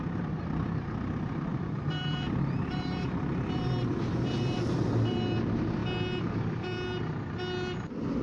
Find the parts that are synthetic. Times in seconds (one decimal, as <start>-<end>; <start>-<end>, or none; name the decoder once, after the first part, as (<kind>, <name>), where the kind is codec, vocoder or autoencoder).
1.5-4.1 (vocoder, BigVGAN v2)